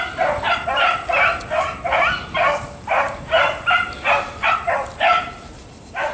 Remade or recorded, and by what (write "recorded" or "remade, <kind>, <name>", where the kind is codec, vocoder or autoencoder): recorded